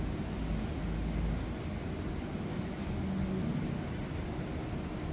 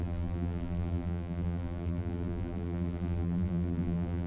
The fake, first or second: second